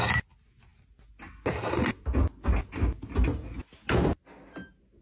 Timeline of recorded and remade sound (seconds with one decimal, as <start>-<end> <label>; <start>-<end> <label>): 0.0-5.0 recorded